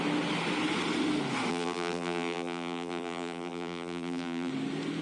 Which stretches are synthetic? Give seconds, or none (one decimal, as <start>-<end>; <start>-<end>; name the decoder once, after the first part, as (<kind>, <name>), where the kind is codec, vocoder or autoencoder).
1.5-4.5 (vocoder, BigVGAN v2)